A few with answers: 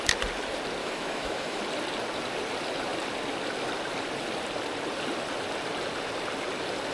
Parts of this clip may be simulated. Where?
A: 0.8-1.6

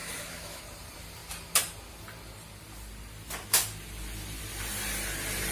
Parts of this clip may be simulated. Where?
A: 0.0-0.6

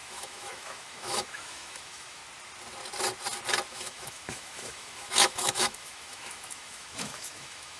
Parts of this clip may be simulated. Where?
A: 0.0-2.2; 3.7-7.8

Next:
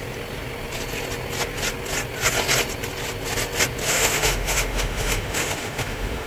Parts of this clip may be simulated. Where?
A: 3.8-6.3

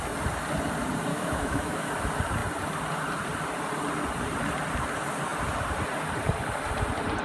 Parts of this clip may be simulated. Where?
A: 1.1-1.9

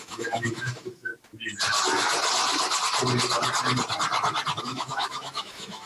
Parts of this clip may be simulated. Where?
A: 0.0-1.1; 4.6-5.9